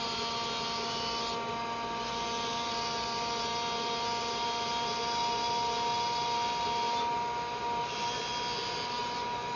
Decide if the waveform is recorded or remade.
recorded